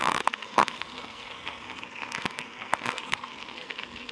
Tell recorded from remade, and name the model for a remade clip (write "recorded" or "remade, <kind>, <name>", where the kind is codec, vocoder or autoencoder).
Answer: remade, codec, SNAC